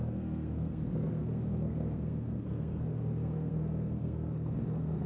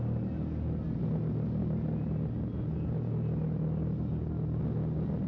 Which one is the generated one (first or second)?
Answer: first